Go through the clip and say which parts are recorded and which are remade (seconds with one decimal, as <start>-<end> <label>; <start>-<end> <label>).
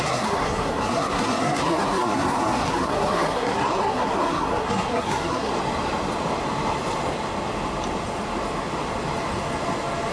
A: 0.0-5.5 remade; 5.5-10.1 recorded